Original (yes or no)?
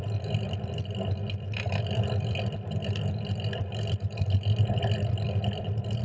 yes